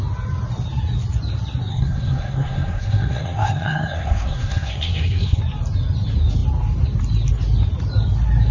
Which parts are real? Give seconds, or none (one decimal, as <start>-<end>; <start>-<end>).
0.0-1.7; 5.4-8.5